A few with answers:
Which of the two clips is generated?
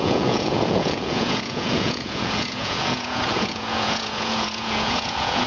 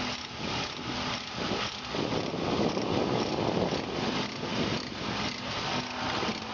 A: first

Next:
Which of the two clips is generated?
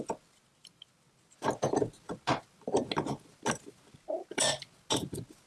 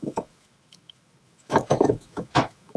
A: second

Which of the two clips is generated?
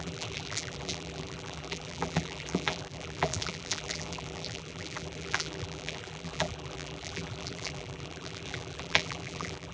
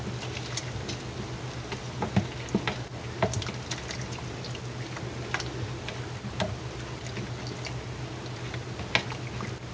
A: first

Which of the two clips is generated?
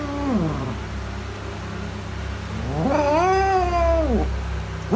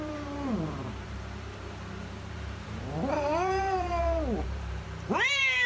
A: second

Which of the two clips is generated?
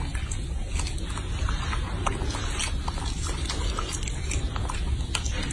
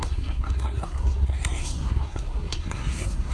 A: second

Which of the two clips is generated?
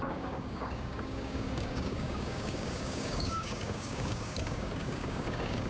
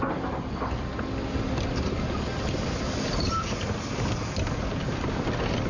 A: first